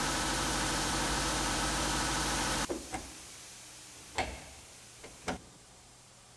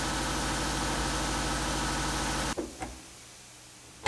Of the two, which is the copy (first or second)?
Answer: first